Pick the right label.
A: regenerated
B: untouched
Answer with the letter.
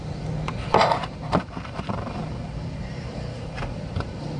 A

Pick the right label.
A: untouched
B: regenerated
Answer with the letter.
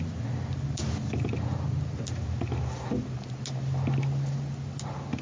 A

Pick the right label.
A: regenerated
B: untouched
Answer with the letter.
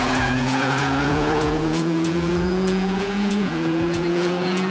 A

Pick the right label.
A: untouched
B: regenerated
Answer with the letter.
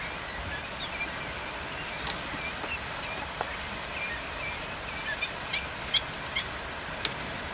A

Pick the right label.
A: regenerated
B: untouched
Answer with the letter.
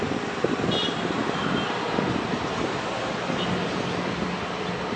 B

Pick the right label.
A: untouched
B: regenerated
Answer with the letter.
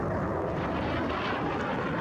A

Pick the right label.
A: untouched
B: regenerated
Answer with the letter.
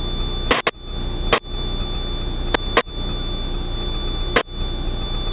A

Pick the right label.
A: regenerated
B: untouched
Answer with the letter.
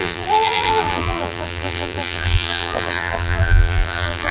A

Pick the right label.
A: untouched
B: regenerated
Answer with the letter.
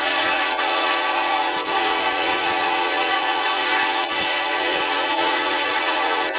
B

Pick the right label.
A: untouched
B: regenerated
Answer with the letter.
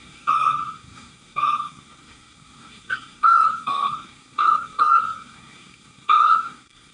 B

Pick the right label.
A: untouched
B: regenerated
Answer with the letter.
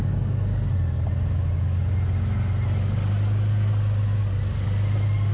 A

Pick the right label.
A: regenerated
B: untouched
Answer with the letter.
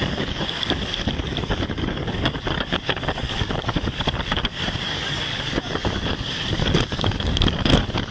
A